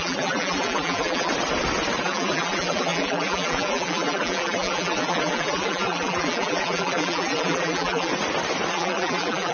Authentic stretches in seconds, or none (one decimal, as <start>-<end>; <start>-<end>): 1.3-2.0; 8.1-8.7